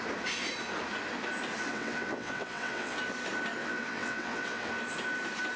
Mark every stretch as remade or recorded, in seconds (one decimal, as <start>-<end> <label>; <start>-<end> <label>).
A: 0.0-1.7 recorded; 1.7-3.0 remade; 3.0-3.6 recorded; 3.6-4.7 remade; 4.7-5.6 recorded